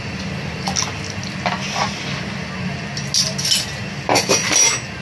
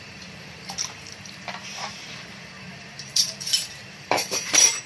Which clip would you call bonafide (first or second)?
first